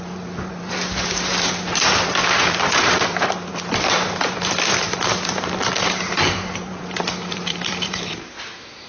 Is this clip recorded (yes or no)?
no